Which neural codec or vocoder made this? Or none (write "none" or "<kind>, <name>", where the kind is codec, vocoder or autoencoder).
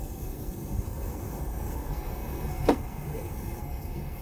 codec, SNAC